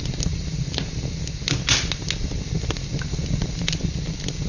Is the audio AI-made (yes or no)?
no